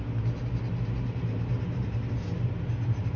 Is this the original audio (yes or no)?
yes